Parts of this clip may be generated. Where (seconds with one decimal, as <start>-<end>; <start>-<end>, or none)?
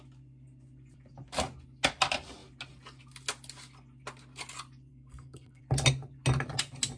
4.9-5.6